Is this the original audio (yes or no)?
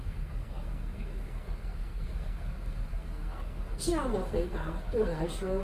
no